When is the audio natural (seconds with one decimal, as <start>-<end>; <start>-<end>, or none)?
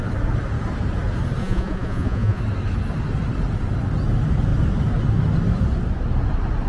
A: 0.0-1.4; 2.4-6.7